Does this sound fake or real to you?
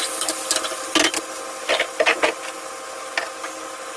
real